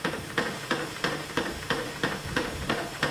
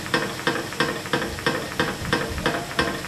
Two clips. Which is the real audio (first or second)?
second